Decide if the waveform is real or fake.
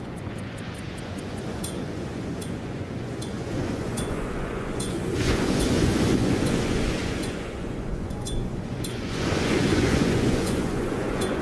fake